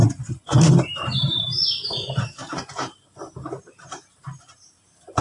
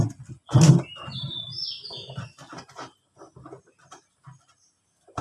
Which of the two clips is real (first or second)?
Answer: second